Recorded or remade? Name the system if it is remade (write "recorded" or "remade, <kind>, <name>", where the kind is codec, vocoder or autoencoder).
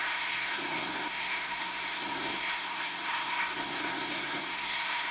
remade, codec, SNAC